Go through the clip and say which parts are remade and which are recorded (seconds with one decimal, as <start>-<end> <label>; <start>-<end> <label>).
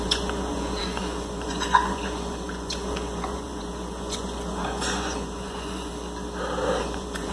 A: 0.0-5.9 remade; 5.9-6.8 recorded; 6.8-7.3 remade